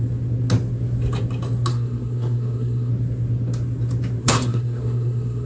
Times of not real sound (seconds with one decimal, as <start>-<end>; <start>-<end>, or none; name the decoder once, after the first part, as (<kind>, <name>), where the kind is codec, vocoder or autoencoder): 1.7-2.9 (codec, SNAC); 4.2-5.5